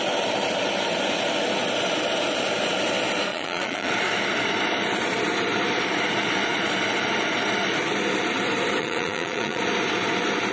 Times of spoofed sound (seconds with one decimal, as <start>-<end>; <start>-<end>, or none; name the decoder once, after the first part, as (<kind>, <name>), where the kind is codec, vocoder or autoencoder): 3.3-3.9 (vocoder, Vocos); 8.8-9.6